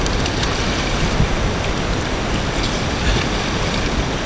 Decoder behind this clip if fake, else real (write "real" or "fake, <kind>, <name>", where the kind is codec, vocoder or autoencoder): real